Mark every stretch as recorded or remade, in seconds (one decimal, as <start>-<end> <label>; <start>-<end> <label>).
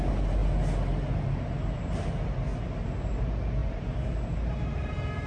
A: 0.0-3.6 recorded; 3.6-5.3 remade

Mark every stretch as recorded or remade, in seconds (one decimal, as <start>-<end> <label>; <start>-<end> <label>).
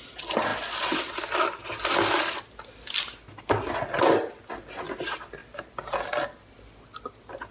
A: 0.0-7.5 recorded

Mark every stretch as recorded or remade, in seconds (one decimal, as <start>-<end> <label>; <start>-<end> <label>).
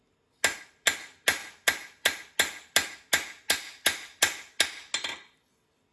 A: 0.0-5.9 recorded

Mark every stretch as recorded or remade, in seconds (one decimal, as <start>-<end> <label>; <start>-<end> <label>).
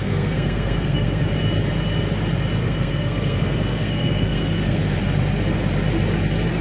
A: 0.0-1.2 remade; 1.2-2.6 recorded; 2.6-5.0 remade; 5.0-6.6 recorded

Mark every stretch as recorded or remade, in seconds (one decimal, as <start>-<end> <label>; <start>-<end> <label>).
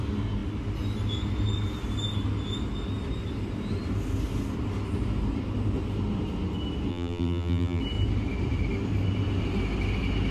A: 0.0-6.9 recorded; 6.9-7.8 remade; 7.8-10.3 recorded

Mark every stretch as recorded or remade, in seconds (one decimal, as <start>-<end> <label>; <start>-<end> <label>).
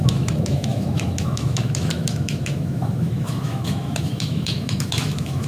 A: 0.0-5.5 remade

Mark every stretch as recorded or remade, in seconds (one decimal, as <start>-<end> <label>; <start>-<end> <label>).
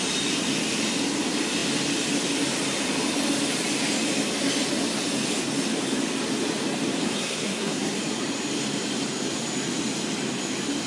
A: 0.0-7.0 recorded; 7.0-8.0 remade; 8.0-10.9 recorded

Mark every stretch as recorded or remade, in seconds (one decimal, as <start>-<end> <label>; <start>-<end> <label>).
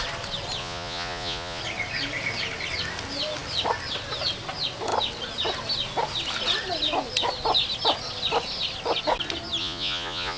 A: 0.0-0.6 recorded; 0.6-1.6 remade; 1.6-9.6 recorded; 9.6-10.4 remade